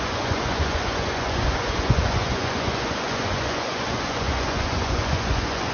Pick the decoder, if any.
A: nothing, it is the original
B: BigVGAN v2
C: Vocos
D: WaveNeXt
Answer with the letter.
C